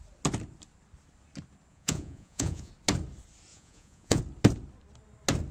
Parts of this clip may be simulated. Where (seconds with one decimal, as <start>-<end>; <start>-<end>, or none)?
1.7-2.7; 3.5-4.2